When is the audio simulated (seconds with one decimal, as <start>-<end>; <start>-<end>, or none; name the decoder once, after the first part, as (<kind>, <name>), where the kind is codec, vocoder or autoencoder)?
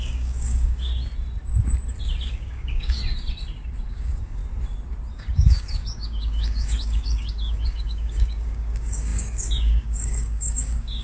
0.0-0.9 (codec, DAC); 2.3-3.0; 3.9-4.4; 5.1-11.0